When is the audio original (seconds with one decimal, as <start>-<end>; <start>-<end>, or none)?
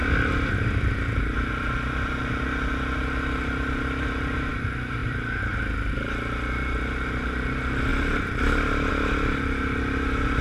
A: 0.0-5.0; 5.6-7.9; 8.9-10.4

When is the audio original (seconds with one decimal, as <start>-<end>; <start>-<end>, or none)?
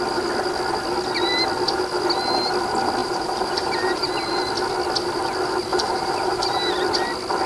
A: 0.0-3.0; 4.1-5.7; 6.7-7.5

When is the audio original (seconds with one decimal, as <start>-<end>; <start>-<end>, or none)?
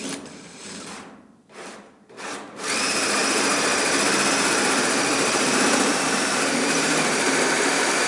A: 3.2-4.3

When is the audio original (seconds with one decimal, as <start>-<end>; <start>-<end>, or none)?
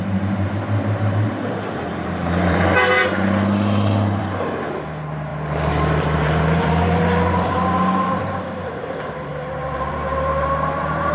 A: 3.0-4.2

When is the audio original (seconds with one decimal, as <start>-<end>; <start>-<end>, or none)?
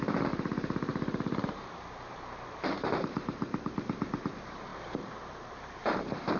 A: none